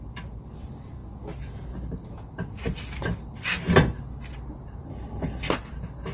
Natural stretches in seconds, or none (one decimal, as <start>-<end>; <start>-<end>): 0.0-4.9; 5.5-6.1